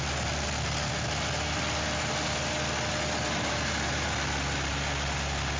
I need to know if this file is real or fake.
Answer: real